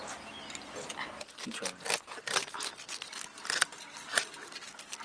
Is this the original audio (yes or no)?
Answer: yes